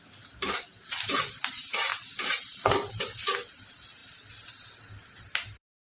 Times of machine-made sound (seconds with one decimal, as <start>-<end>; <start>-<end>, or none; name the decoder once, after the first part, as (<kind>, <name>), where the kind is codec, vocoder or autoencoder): 0.0-4.0 (vocoder, BigVGAN v2); 4.9-5.9